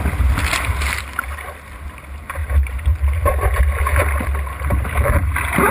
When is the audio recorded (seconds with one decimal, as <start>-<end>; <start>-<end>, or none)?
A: 0.0-5.7